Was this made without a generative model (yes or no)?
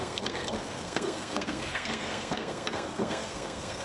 no